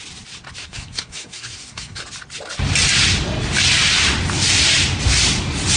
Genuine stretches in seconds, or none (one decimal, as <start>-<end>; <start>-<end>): 0.0-0.6; 2.0-5.8